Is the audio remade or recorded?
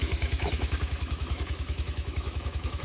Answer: remade